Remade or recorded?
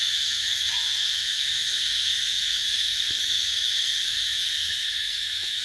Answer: remade